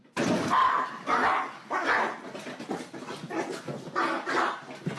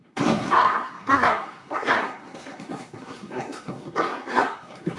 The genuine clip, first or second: first